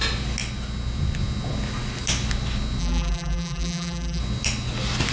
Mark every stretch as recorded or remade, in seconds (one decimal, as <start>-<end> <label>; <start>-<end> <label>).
0.0-2.8 recorded; 2.8-4.2 remade; 4.2-5.1 recorded